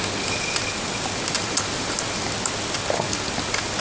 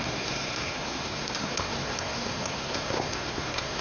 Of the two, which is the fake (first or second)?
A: second